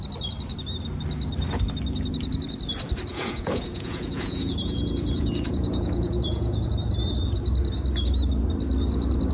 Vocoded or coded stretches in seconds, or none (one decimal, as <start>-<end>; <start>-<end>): 3.1-6.7